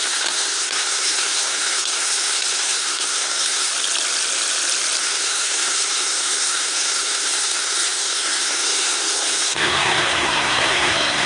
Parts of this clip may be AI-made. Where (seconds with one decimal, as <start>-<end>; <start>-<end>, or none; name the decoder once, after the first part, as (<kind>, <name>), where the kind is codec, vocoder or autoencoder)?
0.0-3.7 (codec, SNAC); 5.0-11.3